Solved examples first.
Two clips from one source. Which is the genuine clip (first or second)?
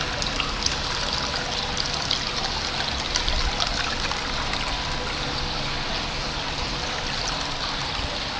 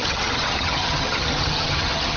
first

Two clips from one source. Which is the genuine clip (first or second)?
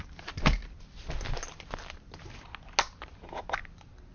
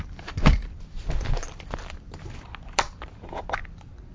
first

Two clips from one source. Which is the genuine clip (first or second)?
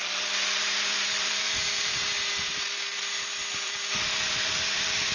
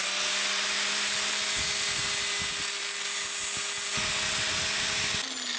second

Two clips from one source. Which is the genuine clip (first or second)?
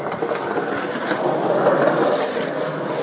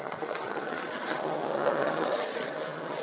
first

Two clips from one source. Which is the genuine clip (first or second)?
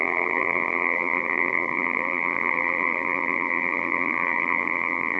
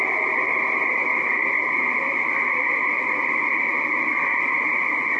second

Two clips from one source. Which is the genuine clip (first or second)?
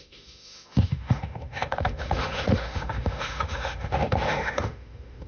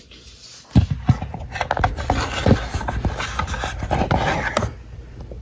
second